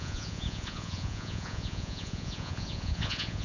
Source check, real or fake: fake